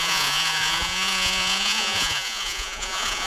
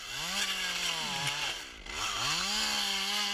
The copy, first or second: first